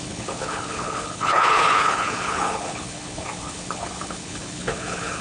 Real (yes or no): no